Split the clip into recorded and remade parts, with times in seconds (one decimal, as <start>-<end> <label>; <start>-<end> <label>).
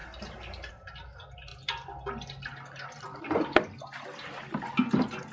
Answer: 0.0-0.7 remade; 0.7-1.5 recorded; 1.5-4.7 remade; 4.7-5.3 recorded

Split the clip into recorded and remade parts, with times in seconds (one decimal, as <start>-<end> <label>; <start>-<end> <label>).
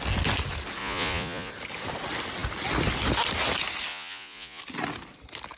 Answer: 0.0-0.8 recorded; 0.8-1.5 remade; 1.5-3.9 recorded; 3.9-4.6 remade; 4.6-5.6 recorded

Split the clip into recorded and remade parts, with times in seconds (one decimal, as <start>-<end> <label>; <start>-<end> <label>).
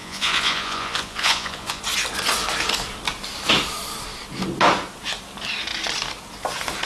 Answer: 0.0-1.8 remade; 1.8-6.9 recorded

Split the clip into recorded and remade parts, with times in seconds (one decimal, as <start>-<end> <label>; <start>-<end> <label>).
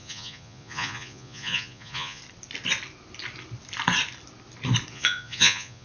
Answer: 0.0-2.2 remade; 2.2-4.9 recorded; 4.9-5.8 remade